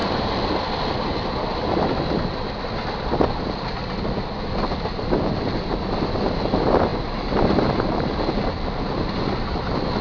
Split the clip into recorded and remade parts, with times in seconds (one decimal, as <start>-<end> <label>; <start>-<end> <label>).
0.0-1.3 remade; 1.3-10.0 recorded